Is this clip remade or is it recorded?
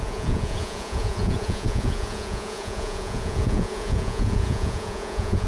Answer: remade